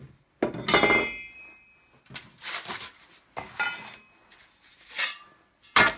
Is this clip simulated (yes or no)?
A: no